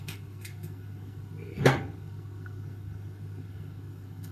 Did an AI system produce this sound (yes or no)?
yes